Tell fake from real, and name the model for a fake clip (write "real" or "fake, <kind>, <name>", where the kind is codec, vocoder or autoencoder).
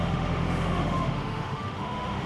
fake, autoencoder, DAC-VAE